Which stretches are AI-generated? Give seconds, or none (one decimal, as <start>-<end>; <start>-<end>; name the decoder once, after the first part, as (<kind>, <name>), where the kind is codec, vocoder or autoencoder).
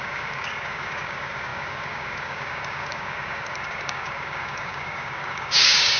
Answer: 0.0-6.0 (codec, DAC)